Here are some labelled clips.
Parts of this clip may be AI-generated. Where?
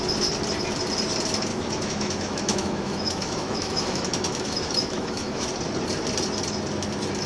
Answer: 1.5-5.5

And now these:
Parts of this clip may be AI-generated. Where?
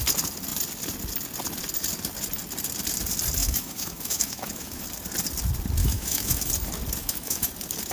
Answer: 3.4-4.8; 5.8-6.5; 7.0-7.5